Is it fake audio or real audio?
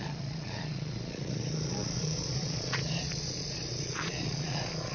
fake